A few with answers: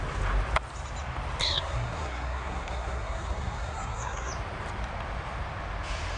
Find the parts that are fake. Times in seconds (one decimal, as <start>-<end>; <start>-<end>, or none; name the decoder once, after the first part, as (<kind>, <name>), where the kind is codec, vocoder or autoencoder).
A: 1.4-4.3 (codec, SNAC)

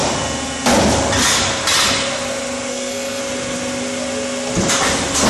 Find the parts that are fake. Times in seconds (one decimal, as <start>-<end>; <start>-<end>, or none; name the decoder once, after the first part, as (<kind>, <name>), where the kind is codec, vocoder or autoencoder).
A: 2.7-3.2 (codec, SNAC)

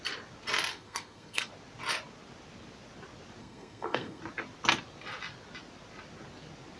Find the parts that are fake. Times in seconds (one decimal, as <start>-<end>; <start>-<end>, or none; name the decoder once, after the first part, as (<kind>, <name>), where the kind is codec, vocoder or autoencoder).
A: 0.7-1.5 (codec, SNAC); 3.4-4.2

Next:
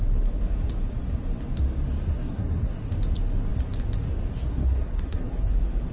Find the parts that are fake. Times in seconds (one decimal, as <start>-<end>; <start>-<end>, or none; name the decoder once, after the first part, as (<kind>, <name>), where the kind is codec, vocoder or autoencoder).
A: 2.1-2.9 (codec, SNAC); 4.5-5.5